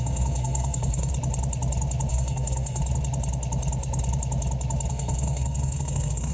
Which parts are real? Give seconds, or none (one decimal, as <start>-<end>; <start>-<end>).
1.1-2.1; 2.8-4.9